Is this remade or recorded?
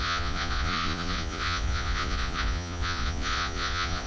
remade